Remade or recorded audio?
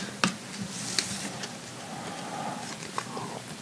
recorded